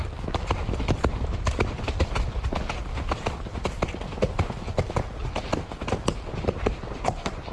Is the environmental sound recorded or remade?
recorded